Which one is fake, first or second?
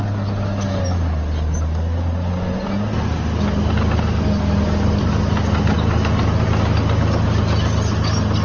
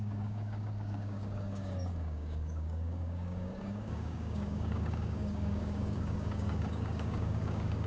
second